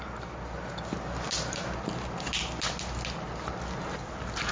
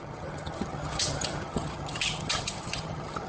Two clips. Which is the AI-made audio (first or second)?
second